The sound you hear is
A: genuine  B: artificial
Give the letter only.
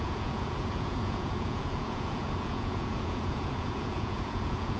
B